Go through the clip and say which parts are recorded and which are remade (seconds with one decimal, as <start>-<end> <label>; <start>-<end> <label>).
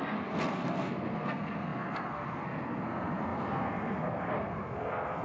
0.0-5.2 remade